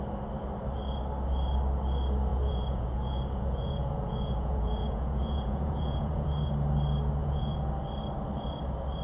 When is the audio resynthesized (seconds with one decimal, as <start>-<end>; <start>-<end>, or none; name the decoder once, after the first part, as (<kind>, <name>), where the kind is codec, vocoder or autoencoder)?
2.3-6.5 (vocoder, Vocos); 7.2-7.7